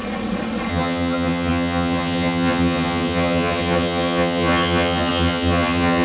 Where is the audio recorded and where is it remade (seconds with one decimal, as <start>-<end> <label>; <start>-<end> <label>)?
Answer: 0.0-0.7 recorded; 0.7-6.0 remade